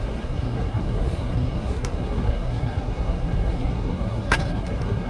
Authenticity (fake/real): fake